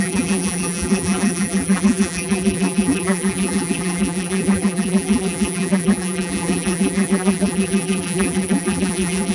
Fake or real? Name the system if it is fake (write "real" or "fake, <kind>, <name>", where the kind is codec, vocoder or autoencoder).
fake, vocoder, BigVGAN v2